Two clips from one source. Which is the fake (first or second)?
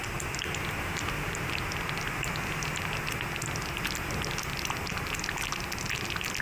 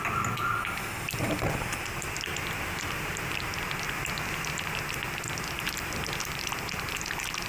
second